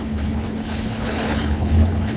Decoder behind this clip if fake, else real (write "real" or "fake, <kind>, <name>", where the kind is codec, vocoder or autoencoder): fake, codec, HILCodec